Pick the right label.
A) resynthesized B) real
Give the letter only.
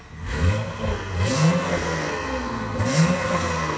A